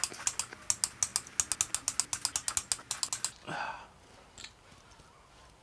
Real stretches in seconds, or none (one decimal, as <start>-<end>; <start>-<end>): 0.0-5.6